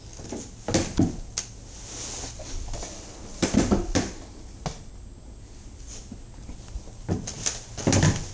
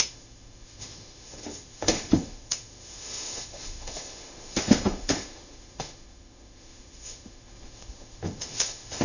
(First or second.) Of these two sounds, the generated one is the second